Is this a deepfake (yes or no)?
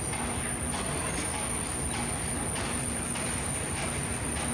no